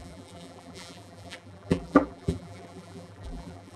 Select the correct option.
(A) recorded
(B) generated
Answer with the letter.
B